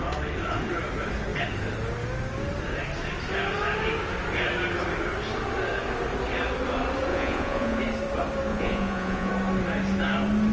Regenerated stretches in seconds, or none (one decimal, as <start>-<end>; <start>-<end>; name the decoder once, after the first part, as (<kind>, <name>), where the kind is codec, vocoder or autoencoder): 7.1-7.8 (vocoder, Vocos); 8.5-9.3